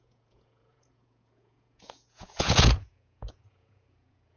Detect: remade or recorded remade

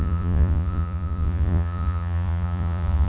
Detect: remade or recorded remade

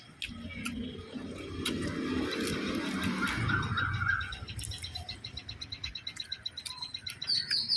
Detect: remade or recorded recorded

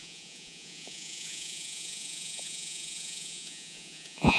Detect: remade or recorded remade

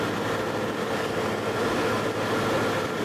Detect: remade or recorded recorded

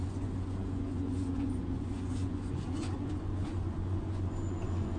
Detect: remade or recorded remade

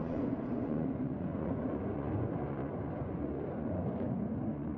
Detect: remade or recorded remade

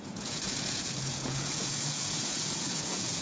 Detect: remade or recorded remade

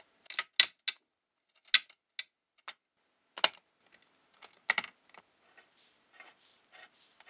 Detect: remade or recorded recorded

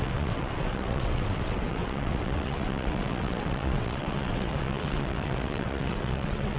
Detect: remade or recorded remade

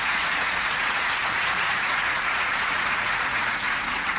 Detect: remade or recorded remade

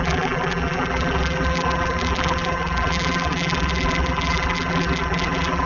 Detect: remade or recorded remade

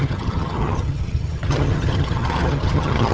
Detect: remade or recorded remade